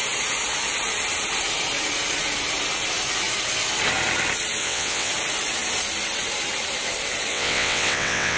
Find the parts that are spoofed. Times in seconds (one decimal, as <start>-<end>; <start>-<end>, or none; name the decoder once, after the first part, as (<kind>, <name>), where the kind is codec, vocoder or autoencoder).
4.6-5.1 (vocoder, WaveNeXt); 7.3-8.4